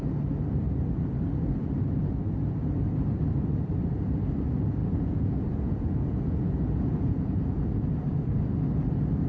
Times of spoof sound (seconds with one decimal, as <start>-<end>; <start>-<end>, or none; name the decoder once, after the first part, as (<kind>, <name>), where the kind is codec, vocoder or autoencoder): 4.8-7.9 (vocoder, Vocos)